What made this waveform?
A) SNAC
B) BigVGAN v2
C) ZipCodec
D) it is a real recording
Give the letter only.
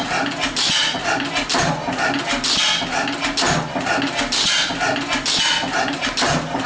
D